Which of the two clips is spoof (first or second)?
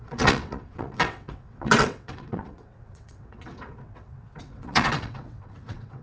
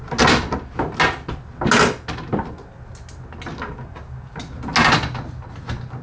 first